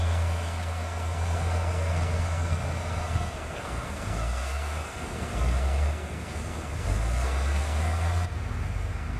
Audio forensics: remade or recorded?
remade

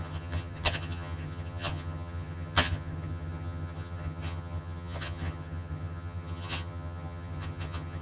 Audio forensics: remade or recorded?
remade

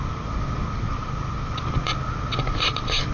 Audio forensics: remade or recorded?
recorded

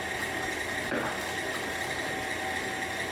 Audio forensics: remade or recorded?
recorded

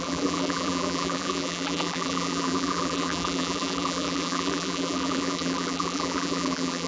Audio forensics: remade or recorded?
remade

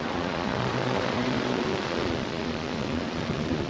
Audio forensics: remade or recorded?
remade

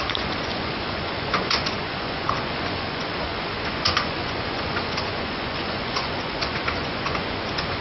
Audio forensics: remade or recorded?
remade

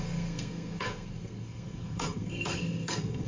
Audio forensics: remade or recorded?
remade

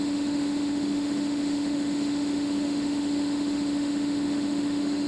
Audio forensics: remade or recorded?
remade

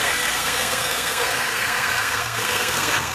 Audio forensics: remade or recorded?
remade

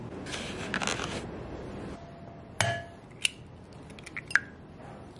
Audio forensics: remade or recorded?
recorded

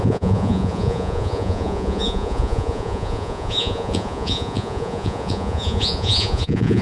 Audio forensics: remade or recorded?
remade